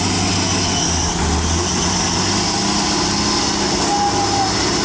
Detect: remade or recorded recorded